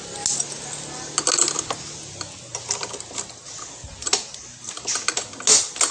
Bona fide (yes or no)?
yes